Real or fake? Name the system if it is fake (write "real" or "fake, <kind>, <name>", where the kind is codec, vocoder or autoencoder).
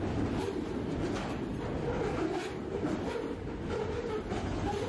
real